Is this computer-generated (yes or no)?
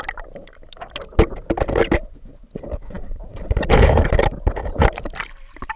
no